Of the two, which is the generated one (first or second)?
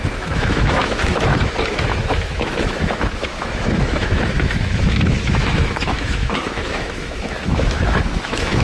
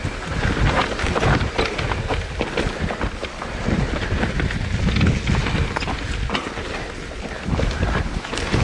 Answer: first